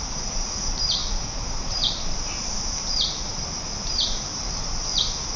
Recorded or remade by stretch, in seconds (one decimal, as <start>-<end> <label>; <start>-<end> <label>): 0.0-5.4 remade